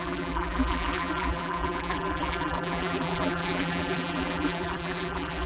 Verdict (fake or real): fake